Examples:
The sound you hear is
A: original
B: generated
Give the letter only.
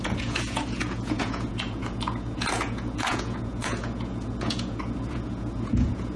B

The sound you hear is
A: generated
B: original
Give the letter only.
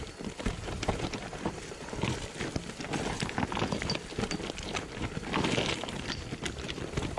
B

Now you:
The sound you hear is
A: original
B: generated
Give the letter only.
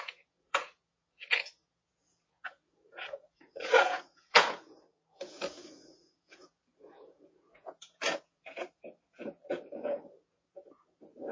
B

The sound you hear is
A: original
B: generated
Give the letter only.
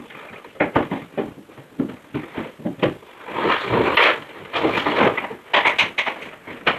A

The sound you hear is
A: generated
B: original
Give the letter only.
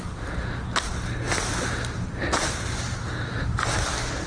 B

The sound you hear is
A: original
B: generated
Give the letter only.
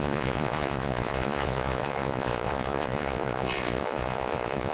B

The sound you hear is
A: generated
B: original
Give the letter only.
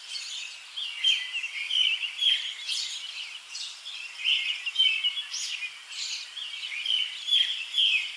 B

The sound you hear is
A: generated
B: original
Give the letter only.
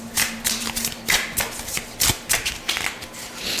B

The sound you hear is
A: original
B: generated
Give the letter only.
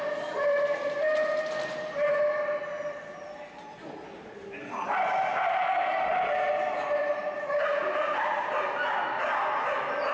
A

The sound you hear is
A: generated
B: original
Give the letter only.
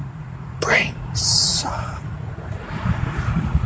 A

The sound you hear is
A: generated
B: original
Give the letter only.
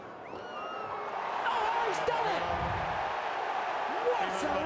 B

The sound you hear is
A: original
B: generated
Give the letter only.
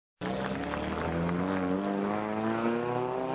A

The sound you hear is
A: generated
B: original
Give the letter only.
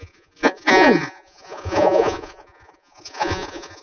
A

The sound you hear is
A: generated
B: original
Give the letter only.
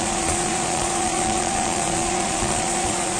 A